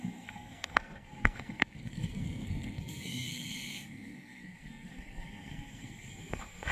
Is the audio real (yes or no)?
no